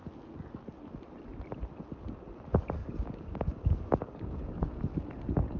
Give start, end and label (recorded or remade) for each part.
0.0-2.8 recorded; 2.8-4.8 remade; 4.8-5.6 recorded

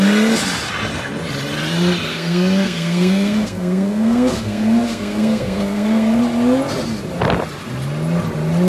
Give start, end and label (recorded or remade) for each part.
0.0-2.1 recorded; 2.1-6.2 remade; 6.2-8.7 recorded

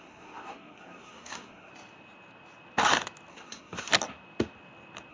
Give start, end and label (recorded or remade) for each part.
0.0-1.7 remade; 1.7-3.3 recorded; 3.3-3.9 remade; 3.9-5.1 recorded

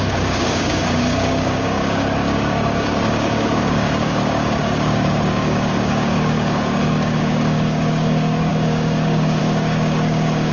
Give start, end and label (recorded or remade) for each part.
0.0-10.5 remade